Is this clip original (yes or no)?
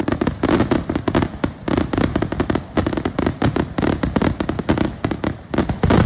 yes